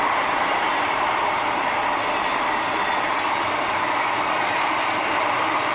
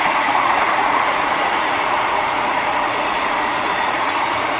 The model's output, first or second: second